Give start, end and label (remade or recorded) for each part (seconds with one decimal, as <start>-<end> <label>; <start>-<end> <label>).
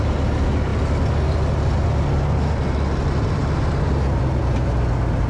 0.0-5.3 recorded